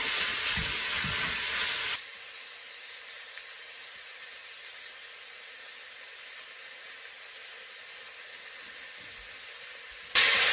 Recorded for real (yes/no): yes